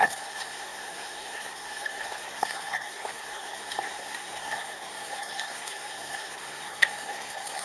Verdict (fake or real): fake